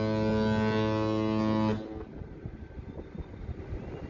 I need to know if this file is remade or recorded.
recorded